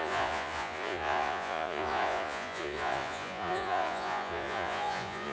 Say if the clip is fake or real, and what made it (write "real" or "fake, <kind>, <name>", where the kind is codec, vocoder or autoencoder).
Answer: fake, vocoder, Vocos